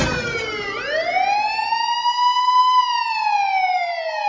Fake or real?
real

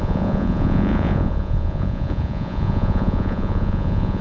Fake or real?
fake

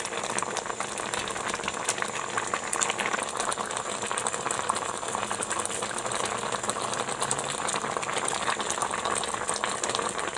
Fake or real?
real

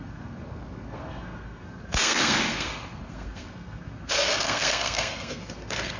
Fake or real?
fake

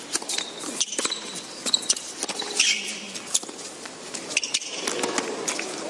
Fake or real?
real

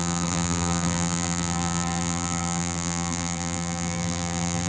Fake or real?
fake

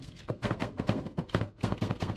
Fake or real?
fake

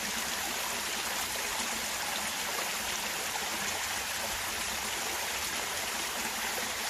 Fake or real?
real